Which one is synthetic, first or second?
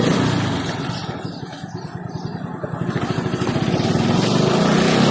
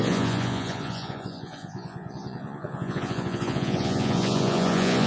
second